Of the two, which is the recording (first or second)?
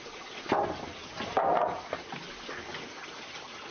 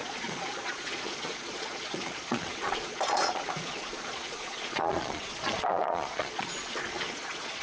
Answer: first